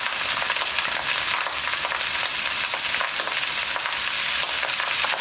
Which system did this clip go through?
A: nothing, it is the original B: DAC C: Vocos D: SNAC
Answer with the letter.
A